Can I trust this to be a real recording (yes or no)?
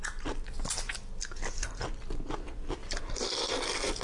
yes